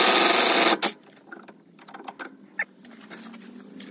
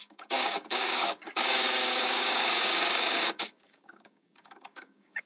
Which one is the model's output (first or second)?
second